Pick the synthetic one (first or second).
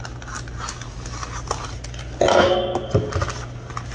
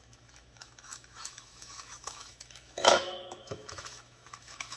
second